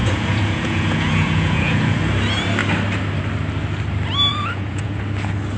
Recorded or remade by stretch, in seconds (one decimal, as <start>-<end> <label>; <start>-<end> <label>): 0.0-2.0 remade; 2.0-4.3 recorded; 4.3-5.0 remade; 5.0-5.6 recorded